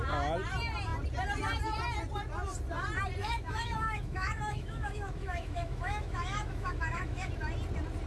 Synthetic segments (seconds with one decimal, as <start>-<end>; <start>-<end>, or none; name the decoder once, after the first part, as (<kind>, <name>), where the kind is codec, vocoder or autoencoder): 3.2-7.3 (autoencoder, DAC-VAE)